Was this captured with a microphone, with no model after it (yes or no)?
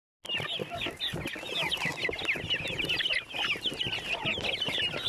yes